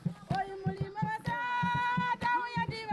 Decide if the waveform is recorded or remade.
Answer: recorded